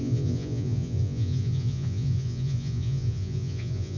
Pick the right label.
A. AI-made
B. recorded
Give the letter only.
A